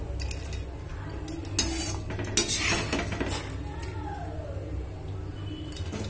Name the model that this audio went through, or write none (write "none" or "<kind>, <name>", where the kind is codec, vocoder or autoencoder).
none